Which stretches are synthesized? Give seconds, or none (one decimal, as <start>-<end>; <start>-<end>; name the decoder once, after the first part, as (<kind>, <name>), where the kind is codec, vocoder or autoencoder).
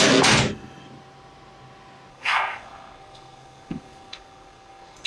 2.1-5.1 (codec, SNAC)